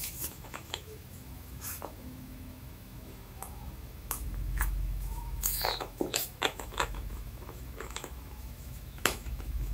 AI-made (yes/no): yes